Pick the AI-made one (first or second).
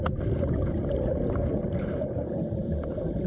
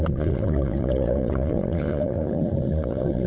second